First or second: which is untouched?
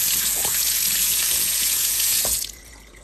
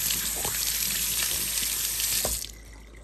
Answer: second